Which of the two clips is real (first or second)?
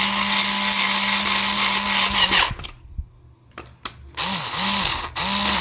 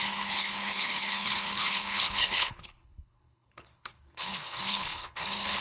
first